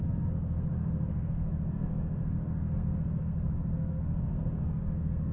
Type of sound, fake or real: fake